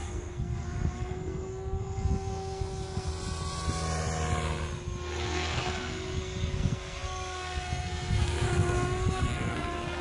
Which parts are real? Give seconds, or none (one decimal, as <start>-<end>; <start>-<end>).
3.1-5.2